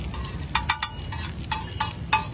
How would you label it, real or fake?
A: real